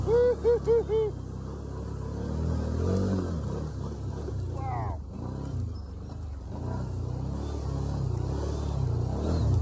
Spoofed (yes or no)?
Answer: no